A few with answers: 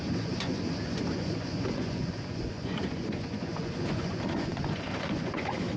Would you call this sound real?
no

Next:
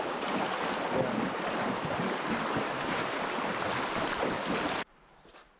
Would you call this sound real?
yes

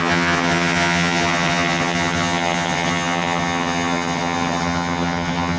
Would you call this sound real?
no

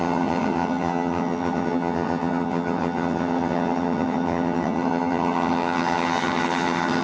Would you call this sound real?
no